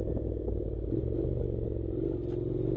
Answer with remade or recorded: recorded